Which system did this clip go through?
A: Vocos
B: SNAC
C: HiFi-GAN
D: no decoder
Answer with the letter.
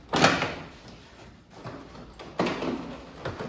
D